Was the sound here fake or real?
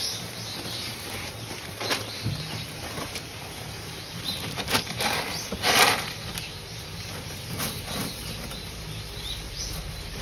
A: fake